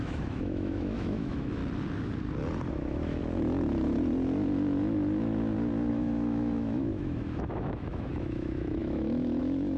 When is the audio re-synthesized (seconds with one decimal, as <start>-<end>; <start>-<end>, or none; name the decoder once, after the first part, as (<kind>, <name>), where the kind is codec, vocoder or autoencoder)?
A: 0.0-1.6 (autoencoder, DAC-VAE); 2.7-3.2; 5.9-9.8